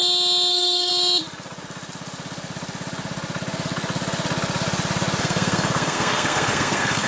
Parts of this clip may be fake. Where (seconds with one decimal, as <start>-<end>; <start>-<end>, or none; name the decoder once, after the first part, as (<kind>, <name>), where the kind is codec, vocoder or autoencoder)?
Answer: 0.5-0.9 (codec, SNAC); 5.2-7.1